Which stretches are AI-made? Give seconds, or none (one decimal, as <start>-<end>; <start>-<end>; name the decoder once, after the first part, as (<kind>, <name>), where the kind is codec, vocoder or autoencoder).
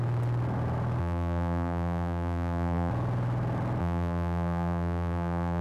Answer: 1.0-2.9 (vocoder, BigVGAN v2); 3.8-5.6